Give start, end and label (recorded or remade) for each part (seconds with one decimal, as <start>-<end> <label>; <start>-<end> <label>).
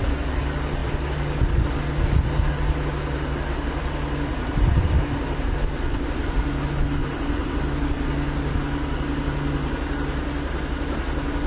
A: 0.0-4.3 recorded; 4.3-5.5 remade; 5.5-7.0 recorded; 7.0-7.6 remade; 7.6-11.5 recorded